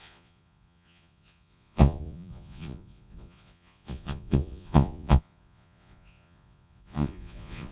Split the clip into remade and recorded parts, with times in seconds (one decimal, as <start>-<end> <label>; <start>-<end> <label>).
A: 0.0-7.7 remade